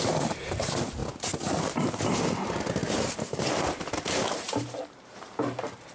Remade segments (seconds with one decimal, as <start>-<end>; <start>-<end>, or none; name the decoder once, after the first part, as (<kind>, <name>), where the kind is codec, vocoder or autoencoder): 0.0-1.0 (vocoder, BigVGAN v2); 1.7-5.9